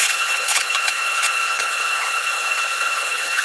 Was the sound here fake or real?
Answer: fake